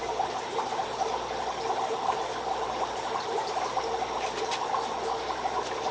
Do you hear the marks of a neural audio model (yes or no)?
no